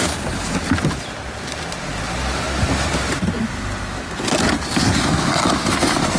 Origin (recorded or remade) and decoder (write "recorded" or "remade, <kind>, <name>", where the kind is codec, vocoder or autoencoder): recorded